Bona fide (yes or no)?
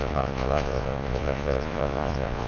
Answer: no